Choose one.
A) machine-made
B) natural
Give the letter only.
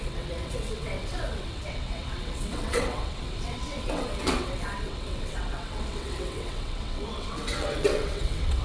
A